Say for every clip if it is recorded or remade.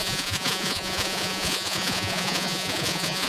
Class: remade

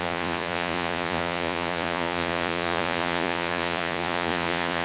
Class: remade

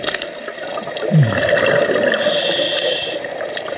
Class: recorded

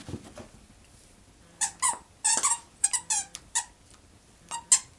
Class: recorded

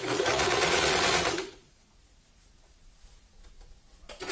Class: remade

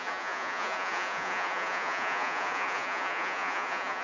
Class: remade